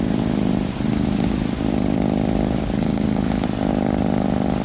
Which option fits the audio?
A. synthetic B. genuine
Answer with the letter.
B